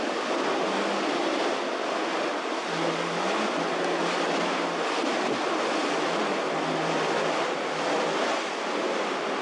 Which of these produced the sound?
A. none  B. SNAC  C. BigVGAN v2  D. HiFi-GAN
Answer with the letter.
A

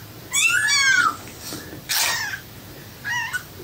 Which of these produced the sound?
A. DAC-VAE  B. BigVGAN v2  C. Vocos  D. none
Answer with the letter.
D